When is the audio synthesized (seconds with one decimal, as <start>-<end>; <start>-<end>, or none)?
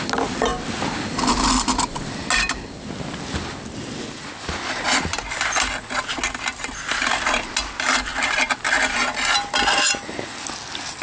none